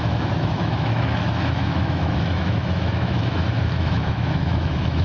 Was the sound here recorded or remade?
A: remade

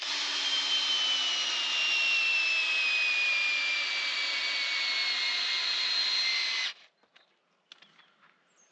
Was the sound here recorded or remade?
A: recorded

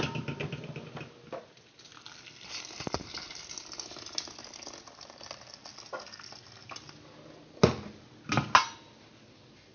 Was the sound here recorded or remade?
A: recorded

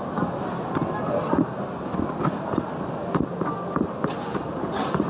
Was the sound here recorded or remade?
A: recorded